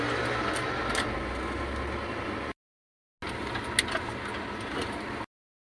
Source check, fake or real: real